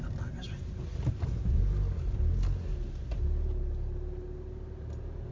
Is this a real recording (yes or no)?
yes